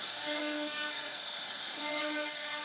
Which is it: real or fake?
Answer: fake